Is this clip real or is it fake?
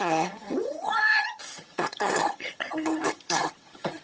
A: fake